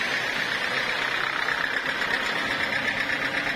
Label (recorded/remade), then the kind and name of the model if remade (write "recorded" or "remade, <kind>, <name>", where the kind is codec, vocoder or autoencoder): recorded